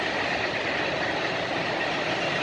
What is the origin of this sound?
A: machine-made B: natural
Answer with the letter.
B